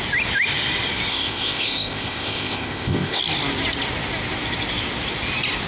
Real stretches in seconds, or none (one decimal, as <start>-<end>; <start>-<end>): 0.0-1.1; 3.2-5.7